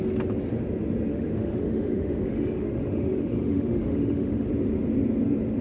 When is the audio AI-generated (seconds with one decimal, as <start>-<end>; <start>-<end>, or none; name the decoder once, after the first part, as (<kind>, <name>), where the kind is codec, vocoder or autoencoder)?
1.1-4.5 (autoencoder, DAC-VAE)